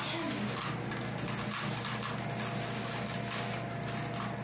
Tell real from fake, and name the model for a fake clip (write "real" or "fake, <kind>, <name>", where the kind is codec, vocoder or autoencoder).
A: real